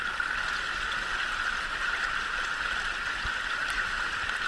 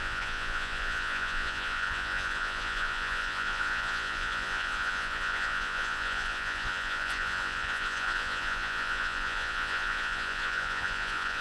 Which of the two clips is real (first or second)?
first